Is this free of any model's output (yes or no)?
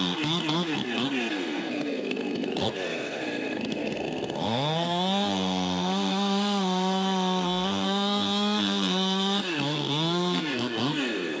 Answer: no